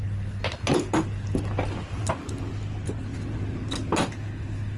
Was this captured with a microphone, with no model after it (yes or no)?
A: yes